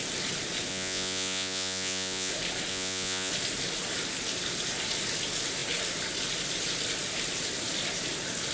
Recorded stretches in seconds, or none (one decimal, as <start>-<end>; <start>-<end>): 0.0-0.7; 2.3-2.7; 3.3-8.5